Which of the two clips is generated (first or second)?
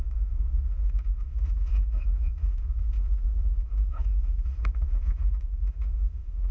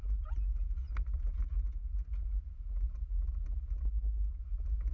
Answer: first